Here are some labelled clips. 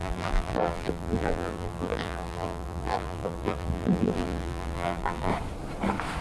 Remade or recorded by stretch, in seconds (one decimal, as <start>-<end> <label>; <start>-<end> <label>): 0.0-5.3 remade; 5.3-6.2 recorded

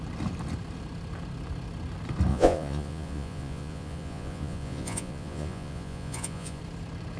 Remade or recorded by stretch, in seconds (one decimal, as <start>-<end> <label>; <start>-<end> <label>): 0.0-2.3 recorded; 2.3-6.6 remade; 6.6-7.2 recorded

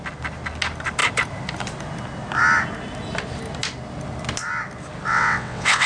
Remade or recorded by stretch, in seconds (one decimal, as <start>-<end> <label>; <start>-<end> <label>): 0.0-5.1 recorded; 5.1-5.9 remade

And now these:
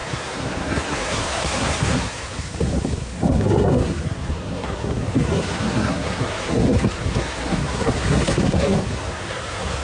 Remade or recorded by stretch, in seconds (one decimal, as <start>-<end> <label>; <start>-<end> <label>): 0.0-9.8 remade

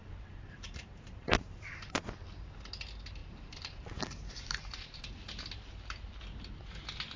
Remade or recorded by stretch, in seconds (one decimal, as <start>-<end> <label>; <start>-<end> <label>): 0.0-2.0 remade; 2.0-3.2 recorded; 3.2-5.0 remade; 5.0-7.2 recorded